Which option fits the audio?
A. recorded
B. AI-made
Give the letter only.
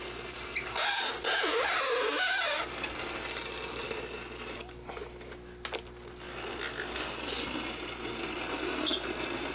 A